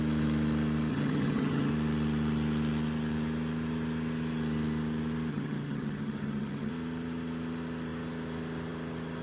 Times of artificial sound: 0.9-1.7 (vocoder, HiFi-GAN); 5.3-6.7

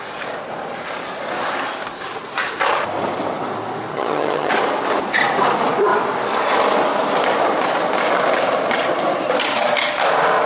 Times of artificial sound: 3.9-4.5 (vocoder, HiFi-GAN)

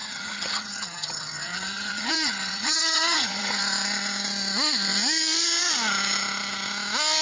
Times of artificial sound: 0.0-3.6 (vocoder, HiFi-GAN)

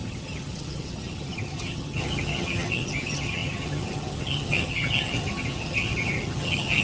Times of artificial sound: 0.0-6.8 (vocoder, HiFi-GAN)

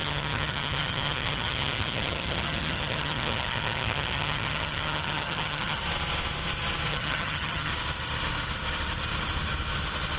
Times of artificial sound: 0.0-5.8 (vocoder, HiFi-GAN); 6.9-7.7